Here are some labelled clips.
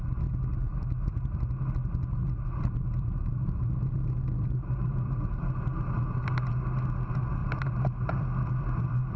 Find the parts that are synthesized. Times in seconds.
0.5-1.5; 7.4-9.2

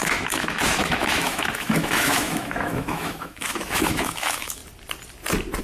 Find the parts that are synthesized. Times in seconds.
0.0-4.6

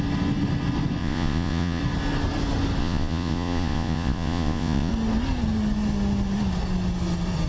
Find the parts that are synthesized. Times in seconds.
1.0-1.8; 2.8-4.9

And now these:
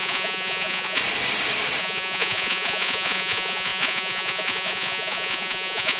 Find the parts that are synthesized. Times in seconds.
0.0-1.0; 1.8-6.0

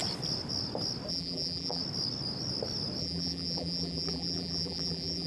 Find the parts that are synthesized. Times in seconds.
1.1-1.8; 3.0-5.3

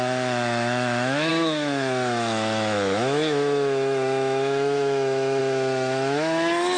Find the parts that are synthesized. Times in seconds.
0.0-6.8